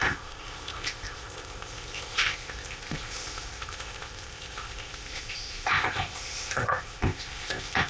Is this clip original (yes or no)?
no